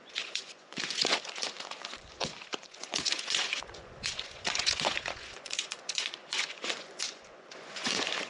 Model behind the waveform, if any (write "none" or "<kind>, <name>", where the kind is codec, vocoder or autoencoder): vocoder, Vocos